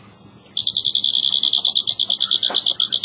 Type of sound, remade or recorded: recorded